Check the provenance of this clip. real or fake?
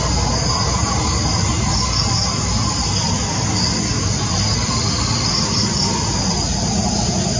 real